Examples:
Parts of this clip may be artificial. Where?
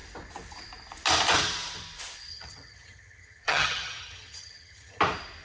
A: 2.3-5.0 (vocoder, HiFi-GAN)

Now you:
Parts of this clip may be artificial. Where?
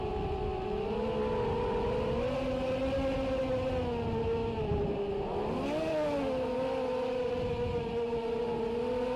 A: none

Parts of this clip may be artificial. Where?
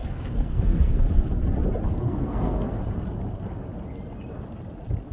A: 0.0-1.0 (codec, SNAC); 2.0-2.7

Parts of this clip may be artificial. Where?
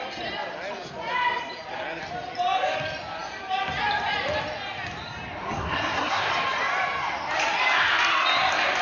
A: 5.6-6.3 (codec, SNAC)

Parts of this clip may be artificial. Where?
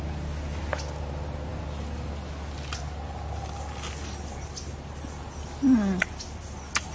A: none